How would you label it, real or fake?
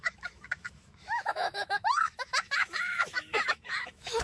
fake